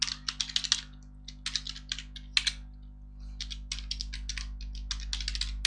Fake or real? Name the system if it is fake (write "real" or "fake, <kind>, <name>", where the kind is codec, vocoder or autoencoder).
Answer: real